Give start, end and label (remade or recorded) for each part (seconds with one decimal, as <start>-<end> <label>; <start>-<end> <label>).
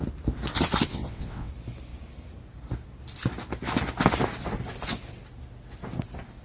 0.0-0.9 recorded; 0.9-1.5 remade; 1.5-6.4 recorded